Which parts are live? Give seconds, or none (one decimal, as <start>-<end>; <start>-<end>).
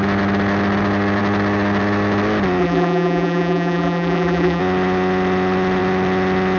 0.0-2.6; 4.6-6.6